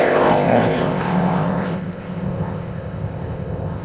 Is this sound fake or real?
fake